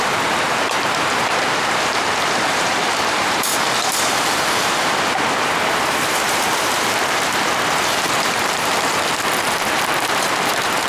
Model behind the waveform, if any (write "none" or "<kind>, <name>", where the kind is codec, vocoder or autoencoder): vocoder, BigVGAN v2